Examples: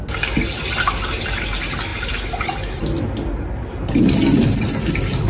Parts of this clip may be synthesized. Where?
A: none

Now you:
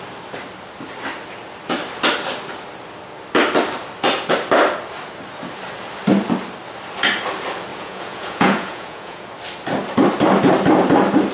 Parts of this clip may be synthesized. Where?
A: 7.7-9.3 (vocoder, Vocos)

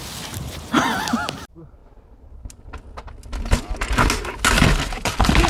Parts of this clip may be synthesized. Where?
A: none

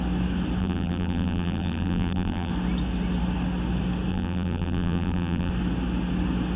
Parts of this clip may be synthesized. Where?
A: 0.6-2.5 (vocoder, BigVGAN v2); 4.1-5.5

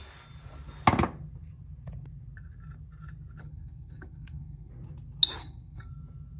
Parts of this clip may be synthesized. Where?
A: 3.4-4.7 (codec, SNAC); 5.4-5.9